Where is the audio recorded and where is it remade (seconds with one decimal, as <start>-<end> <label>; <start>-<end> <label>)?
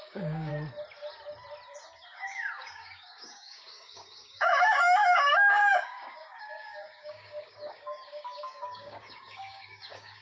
0.0-0.5 remade; 0.5-2.0 recorded; 2.0-10.2 remade